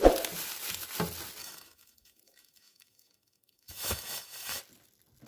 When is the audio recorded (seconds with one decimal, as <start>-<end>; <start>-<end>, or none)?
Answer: 0.0-1.4; 4.6-5.3